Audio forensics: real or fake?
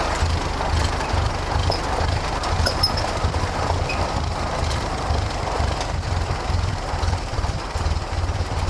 fake